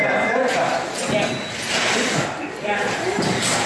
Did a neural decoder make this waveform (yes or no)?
yes